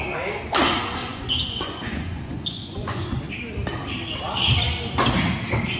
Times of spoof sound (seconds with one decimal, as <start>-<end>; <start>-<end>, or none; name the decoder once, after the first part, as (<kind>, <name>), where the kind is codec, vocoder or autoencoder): 1.0-3.2 (vocoder, Vocos)